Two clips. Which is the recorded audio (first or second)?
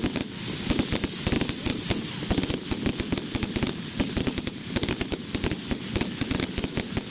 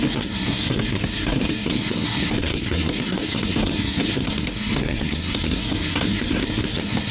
first